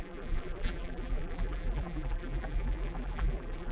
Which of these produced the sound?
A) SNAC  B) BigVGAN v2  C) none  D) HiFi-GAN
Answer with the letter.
B